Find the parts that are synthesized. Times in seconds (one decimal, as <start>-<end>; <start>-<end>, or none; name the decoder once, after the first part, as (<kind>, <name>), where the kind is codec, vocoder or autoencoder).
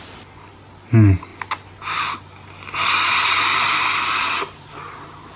none